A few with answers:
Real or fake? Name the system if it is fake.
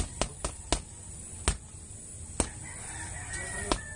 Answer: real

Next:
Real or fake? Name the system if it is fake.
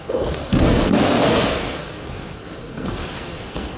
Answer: fake, codec, SNAC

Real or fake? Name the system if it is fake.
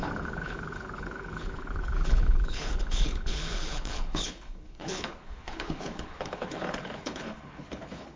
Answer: fake, codec, HILCodec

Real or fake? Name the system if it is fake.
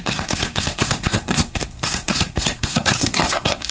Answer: fake, codec, SNAC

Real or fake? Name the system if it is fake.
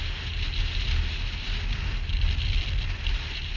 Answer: real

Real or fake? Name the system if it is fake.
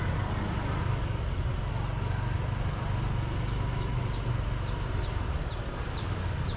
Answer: real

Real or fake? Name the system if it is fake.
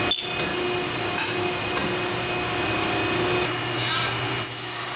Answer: real